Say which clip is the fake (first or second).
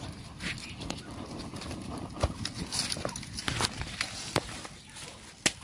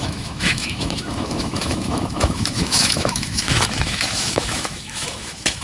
second